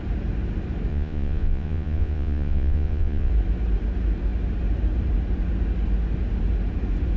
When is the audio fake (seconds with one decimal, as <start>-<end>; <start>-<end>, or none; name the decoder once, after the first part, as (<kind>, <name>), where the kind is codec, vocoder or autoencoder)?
0.9-3.3 (vocoder, Vocos)